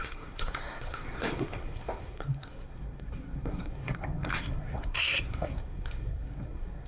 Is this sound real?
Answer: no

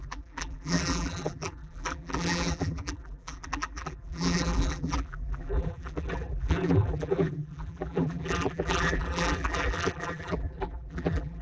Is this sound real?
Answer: no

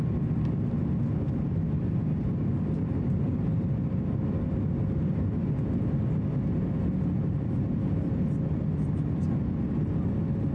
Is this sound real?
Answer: yes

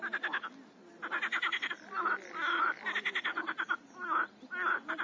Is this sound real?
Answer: yes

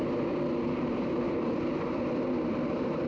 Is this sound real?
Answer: no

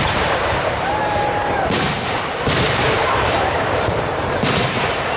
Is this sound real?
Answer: no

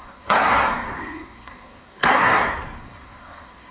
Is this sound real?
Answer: no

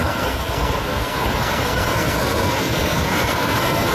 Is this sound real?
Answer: no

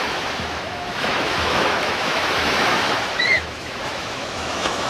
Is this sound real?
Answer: no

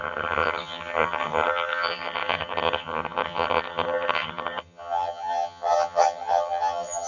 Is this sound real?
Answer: no